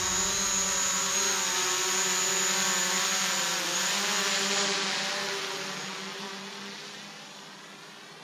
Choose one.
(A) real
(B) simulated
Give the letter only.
A